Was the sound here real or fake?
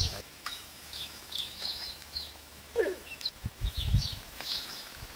fake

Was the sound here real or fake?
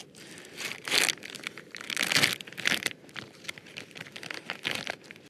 real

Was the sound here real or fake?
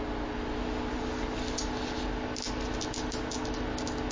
real